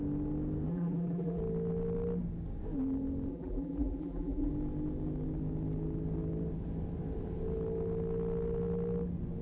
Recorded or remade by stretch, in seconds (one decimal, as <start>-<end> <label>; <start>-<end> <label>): 0.0-0.7 recorded; 0.7-1.4 remade; 1.4-3.3 recorded; 3.3-4.5 remade; 4.5-9.4 recorded